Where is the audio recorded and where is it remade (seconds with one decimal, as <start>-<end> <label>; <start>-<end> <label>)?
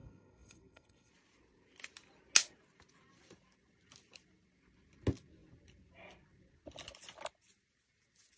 0.0-1.1 remade; 1.1-8.4 recorded